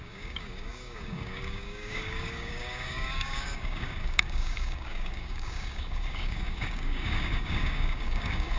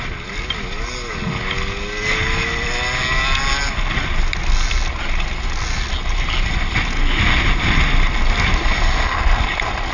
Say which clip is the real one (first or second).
second